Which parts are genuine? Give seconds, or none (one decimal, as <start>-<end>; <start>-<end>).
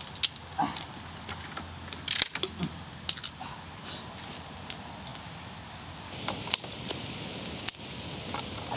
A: 0.0-8.8